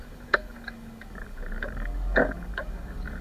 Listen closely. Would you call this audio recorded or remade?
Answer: remade